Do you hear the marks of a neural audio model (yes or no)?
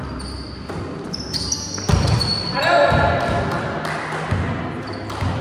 no